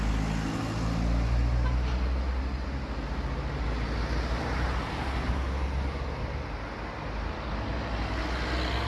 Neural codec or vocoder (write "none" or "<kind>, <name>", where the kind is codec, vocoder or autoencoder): none